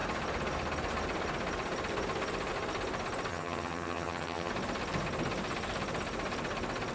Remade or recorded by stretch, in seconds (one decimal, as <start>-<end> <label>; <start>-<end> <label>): 0.0-3.3 recorded; 3.3-4.5 remade; 4.5-6.9 recorded